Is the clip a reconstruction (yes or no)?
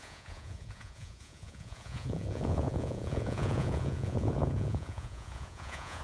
yes